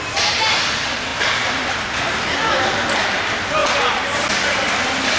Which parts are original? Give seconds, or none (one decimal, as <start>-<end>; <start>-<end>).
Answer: 0.0-5.2